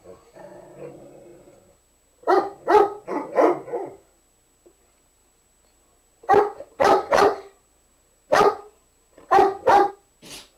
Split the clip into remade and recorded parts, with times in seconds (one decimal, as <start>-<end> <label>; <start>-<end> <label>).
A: 0.0-5.2 recorded; 5.2-9.9 remade; 9.9-10.6 recorded